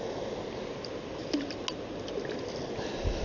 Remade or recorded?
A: recorded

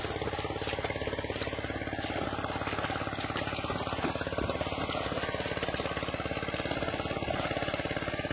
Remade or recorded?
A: recorded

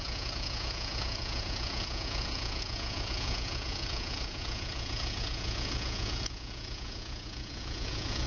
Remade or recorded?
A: remade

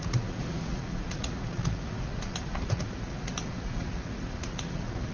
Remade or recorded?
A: remade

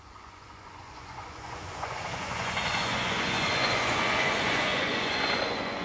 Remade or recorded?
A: remade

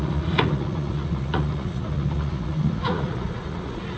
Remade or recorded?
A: remade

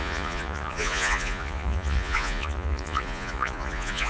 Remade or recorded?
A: remade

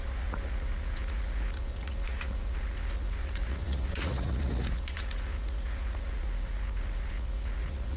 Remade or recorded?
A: remade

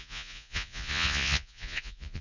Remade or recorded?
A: remade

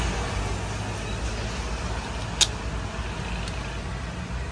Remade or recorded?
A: recorded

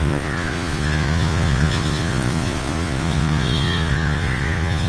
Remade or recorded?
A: remade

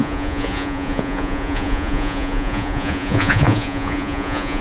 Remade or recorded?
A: remade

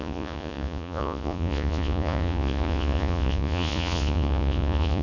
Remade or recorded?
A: remade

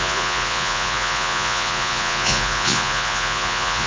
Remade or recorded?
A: remade